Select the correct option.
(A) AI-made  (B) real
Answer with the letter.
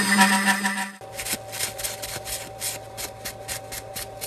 B